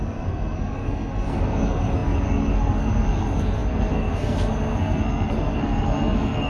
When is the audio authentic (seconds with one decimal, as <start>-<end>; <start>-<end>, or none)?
none